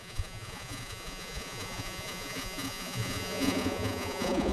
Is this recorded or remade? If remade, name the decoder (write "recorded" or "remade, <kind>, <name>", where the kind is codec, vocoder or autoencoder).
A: remade, vocoder, Vocos